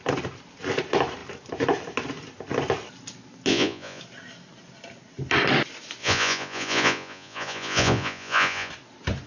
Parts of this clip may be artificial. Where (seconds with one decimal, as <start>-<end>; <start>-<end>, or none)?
3.5-4.0; 6.0-8.7